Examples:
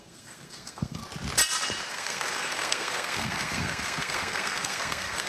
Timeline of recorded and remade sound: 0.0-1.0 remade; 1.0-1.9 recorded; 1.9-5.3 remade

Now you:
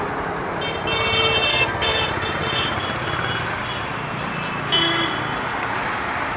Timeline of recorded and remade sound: 0.0-1.5 recorded; 1.5-2.1 remade; 2.1-6.4 recorded

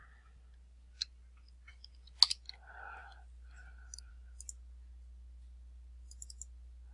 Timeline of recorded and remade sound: 0.0-6.9 recorded